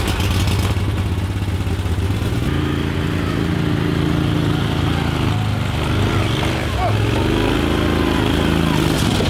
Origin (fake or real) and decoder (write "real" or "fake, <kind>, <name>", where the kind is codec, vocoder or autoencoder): real